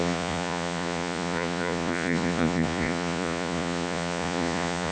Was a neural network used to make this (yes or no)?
yes